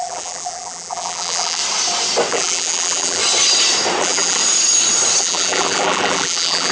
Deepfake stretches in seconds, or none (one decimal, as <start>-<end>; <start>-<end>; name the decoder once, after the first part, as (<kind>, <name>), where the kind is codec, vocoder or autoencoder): 0.0-1.6 (vocoder, BigVGAN v2); 2.3-3.2; 4.0-4.4; 5.2-6.7